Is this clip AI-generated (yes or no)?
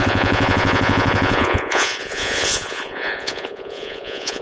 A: yes